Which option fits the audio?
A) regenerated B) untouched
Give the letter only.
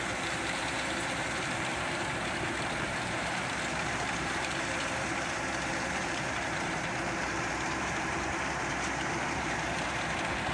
A